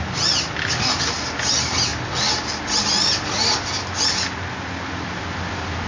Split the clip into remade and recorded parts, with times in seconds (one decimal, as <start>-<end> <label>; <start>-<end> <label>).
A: 0.0-5.9 recorded